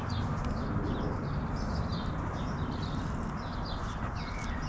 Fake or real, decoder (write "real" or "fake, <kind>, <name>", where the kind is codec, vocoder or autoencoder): real